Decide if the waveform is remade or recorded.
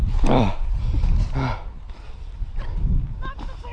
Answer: recorded